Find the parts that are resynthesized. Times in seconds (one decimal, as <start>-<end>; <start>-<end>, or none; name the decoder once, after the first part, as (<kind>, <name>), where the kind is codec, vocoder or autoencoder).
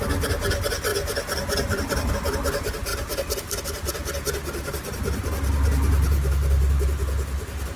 0.9-2.1 (vocoder, BigVGAN v2); 2.9-3.6